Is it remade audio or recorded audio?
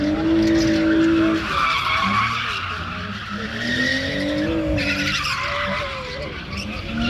recorded